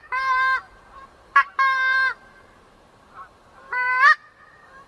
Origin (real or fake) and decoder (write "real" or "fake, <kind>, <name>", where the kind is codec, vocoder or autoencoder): fake, vocoder, BigVGAN v2